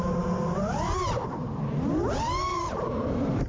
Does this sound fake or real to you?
fake